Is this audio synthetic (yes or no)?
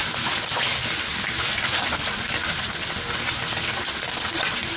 no